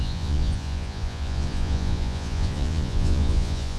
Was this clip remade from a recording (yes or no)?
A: yes